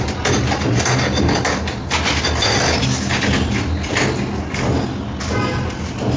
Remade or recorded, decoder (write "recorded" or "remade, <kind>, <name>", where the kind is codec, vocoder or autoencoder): recorded